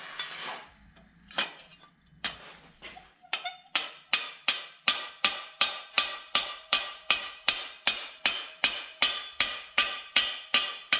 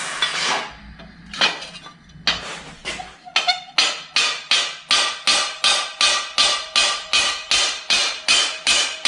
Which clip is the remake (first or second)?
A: first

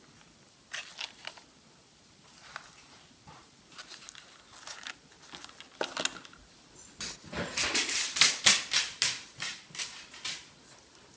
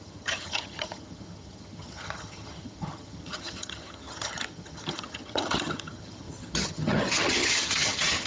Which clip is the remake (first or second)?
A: second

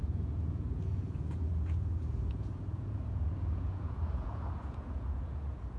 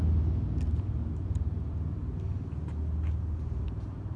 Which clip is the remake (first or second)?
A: first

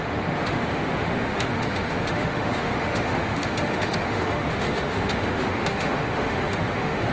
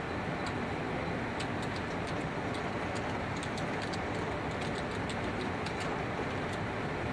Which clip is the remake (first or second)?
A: first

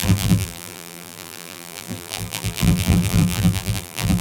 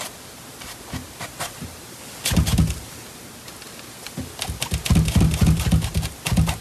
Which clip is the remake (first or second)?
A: first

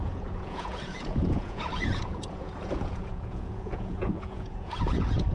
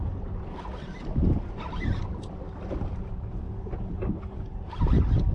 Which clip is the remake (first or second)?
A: first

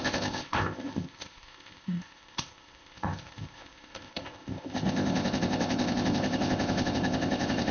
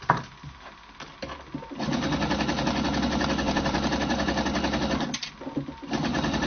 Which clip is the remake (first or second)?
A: first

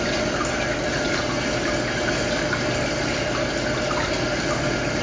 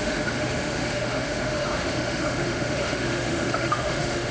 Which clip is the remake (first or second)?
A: second